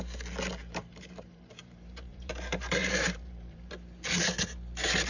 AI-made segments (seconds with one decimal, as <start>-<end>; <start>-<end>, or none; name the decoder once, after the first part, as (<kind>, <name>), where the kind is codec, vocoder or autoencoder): 0.6-3.7 (vocoder, BigVGAN v2)